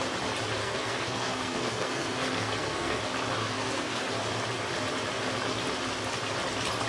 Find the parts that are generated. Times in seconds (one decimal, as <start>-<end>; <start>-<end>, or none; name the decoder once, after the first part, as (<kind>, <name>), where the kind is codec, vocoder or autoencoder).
0.6-3.0 (codec, SNAC); 3.4-4.0